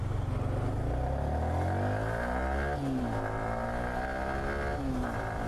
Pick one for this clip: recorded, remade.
recorded